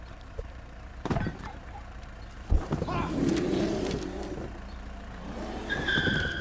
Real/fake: fake